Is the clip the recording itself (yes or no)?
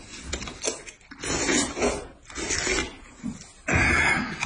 yes